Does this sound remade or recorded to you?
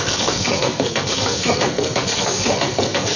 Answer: remade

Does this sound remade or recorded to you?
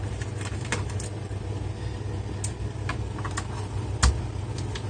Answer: recorded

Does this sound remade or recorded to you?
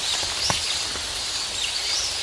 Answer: recorded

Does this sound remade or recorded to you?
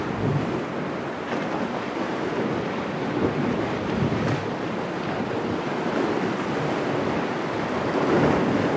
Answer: recorded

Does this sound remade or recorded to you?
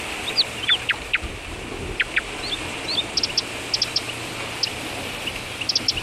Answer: recorded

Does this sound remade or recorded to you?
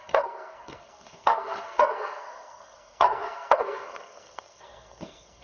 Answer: remade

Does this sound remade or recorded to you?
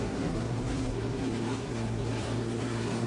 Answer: remade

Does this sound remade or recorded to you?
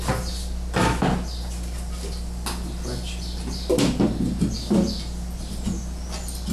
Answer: recorded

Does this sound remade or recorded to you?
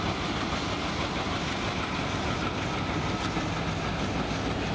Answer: recorded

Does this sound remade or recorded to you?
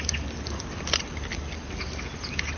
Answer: recorded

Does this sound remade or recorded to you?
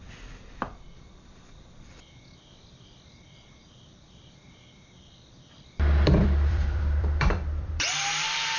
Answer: remade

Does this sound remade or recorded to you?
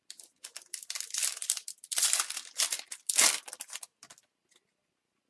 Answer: recorded